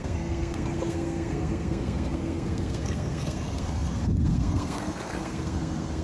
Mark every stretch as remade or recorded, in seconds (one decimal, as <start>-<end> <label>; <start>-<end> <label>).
0.0-6.0 remade

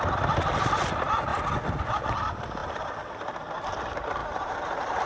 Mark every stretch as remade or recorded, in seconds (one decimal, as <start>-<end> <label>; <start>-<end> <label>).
0.0-4.2 recorded; 4.2-5.1 remade

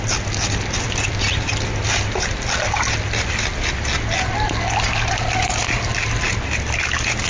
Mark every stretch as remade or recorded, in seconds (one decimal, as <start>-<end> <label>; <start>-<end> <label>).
0.0-7.3 recorded

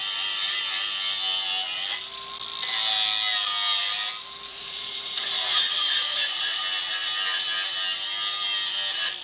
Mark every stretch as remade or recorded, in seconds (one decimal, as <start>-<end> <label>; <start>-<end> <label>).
0.0-4.5 recorded; 4.5-6.6 remade; 6.6-9.2 recorded